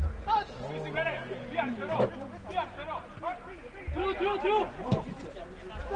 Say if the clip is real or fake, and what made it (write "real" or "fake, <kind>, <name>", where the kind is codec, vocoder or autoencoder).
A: real